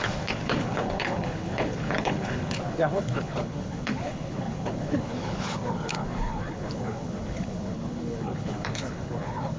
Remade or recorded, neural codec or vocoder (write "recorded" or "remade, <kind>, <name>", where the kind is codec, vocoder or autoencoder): remade, codec, HILCodec